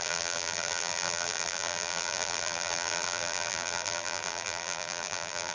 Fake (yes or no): yes